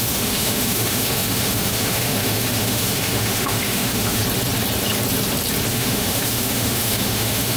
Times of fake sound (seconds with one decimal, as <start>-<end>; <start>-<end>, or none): 0.0-4.2; 5.7-7.6